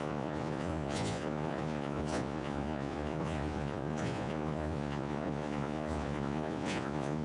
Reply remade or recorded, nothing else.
remade